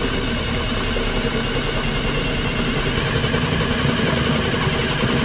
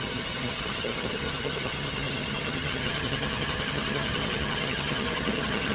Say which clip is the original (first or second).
first